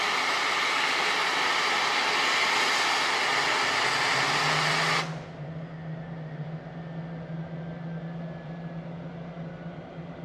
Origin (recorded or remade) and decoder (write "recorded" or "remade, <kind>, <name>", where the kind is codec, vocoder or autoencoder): recorded